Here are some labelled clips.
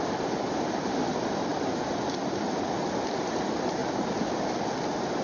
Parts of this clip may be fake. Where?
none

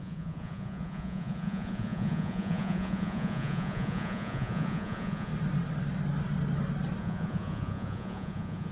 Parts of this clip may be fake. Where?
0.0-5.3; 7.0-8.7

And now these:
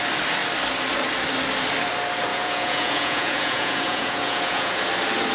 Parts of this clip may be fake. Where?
2.3-4.7

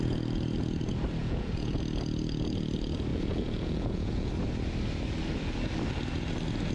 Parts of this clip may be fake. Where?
1.2-1.8; 3.1-4.3

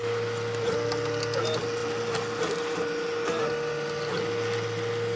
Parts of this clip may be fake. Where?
none

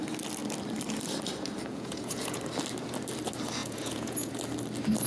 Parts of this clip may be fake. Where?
1.7-2.4; 3.6-4.3